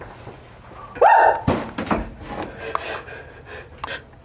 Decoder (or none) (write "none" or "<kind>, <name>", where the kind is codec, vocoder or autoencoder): none